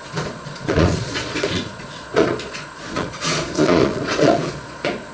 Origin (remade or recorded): remade